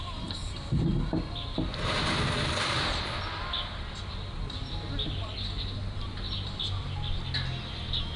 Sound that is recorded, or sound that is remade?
recorded